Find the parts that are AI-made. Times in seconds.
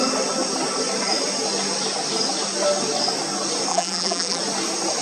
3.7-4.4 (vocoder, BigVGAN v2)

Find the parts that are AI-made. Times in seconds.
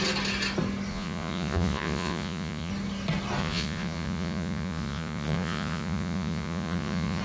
0.9-2.7 (vocoder, Vocos); 3.4-7.2